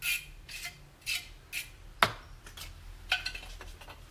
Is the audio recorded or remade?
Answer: recorded